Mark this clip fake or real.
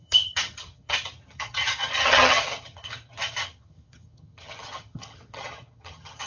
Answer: fake